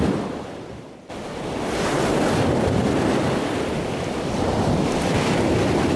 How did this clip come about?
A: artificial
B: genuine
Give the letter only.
B